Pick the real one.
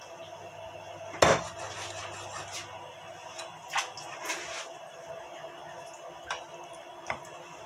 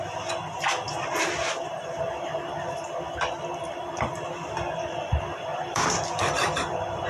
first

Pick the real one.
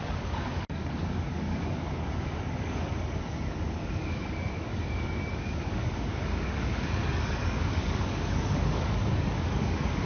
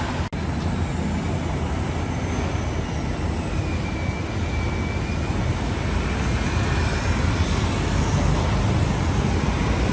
second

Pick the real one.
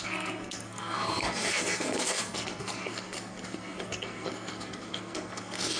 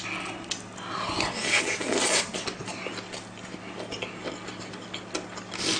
second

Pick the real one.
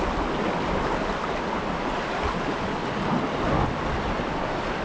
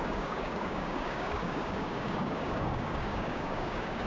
first